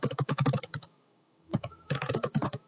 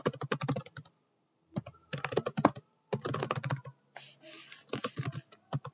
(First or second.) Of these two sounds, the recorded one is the second